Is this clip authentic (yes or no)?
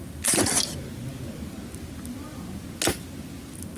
yes